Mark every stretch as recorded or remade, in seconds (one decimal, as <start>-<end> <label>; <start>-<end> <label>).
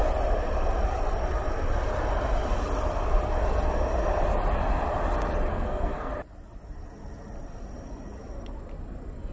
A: 0.0-5.5 recorded; 5.5-6.1 remade; 6.1-9.3 recorded